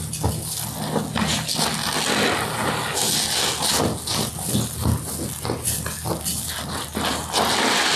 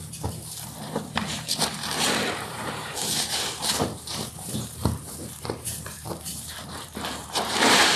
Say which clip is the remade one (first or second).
second